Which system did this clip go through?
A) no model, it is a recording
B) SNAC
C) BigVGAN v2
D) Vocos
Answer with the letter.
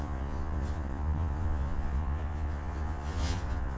D